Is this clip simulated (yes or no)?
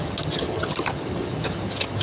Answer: yes